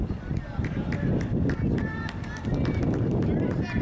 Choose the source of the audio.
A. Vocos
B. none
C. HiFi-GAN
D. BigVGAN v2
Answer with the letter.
B